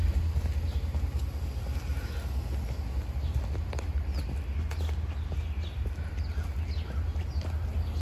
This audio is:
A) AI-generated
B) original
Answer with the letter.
B